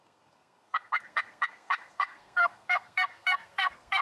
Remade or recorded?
remade